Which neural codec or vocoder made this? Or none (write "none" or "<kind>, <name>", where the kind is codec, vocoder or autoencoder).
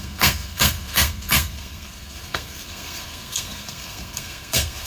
codec, SNAC